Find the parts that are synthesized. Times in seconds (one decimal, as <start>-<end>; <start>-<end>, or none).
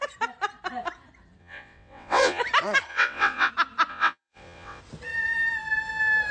1.4-2.4; 2.9-3.5; 3.9-4.8